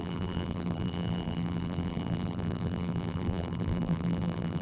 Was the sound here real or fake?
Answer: fake